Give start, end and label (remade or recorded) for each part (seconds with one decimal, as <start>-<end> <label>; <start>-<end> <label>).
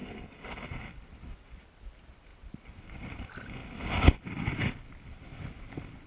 0.0-0.7 remade; 0.7-6.1 recorded